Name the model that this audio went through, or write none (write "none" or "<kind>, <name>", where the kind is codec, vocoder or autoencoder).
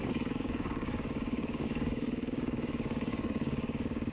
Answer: codec, DAC